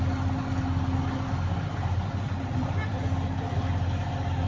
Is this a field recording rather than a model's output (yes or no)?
yes